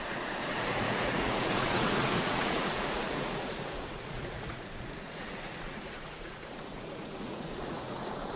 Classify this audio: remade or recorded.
remade